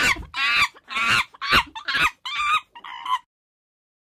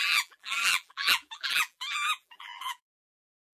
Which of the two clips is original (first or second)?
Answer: first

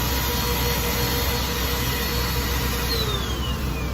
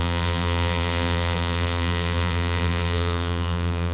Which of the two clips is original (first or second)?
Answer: first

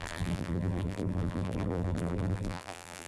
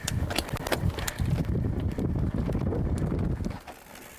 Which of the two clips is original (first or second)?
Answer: second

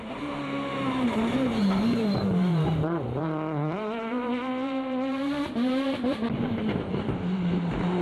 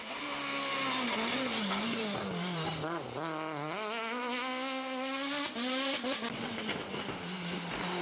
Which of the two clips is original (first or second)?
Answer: second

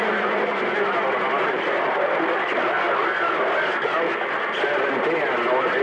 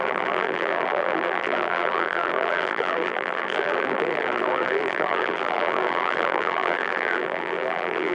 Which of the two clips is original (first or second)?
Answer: first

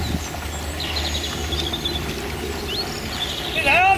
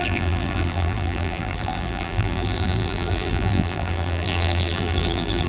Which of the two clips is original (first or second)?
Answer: first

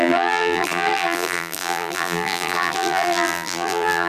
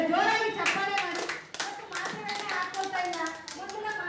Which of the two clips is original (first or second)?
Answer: second